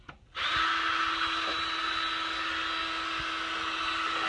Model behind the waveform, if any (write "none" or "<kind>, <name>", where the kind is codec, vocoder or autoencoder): none